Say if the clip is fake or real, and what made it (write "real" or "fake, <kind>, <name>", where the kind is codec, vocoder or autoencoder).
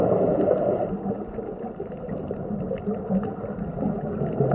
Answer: real